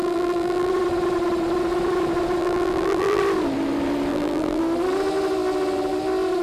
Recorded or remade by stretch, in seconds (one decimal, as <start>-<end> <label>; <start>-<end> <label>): 0.0-0.7 remade; 0.7-2.4 recorded; 2.4-3.2 remade; 3.2-4.1 recorded; 4.1-4.6 remade; 4.6-6.4 recorded